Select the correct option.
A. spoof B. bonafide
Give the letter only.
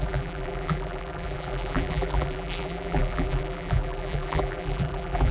A